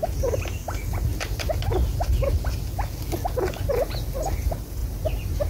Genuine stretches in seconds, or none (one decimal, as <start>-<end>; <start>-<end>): 0.5-4.8